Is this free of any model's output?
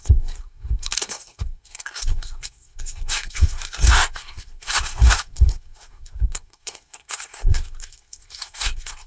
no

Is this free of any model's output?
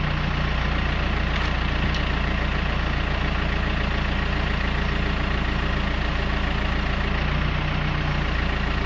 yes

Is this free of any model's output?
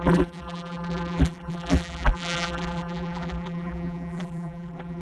no